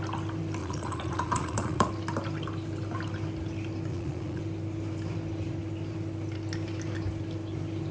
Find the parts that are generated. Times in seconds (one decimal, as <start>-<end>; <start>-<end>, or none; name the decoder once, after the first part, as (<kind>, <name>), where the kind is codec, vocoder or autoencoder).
0.6-1.9 (vocoder, Vocos); 3.9-4.4